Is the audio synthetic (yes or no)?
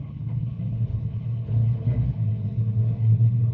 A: yes